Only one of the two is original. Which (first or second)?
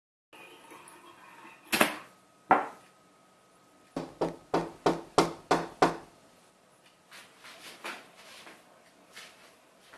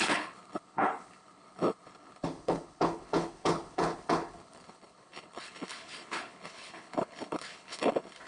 first